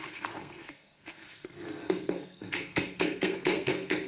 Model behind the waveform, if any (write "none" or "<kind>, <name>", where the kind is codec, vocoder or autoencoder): codec, SNAC